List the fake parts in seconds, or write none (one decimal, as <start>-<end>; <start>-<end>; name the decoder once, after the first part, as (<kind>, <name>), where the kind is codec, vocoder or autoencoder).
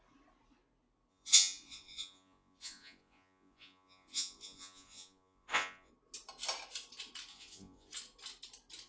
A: 1.1-5.9 (vocoder, Vocos); 7.3-7.9